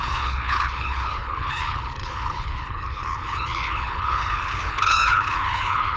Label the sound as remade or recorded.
remade